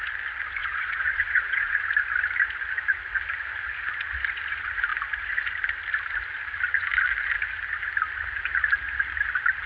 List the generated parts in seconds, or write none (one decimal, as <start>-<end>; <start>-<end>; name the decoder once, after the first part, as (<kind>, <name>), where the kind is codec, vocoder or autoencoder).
0.6-1.8 (vocoder, Vocos)